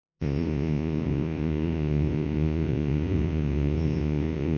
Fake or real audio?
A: fake